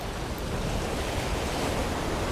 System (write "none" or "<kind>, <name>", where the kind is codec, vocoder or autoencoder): none